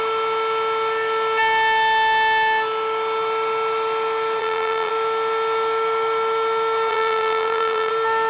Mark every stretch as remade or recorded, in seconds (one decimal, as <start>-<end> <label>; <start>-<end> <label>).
0.0-4.4 recorded; 4.4-4.9 remade; 4.9-6.9 recorded; 6.9-7.9 remade; 7.9-8.3 recorded